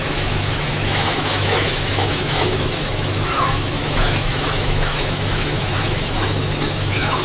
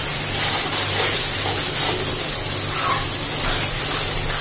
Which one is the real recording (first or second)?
second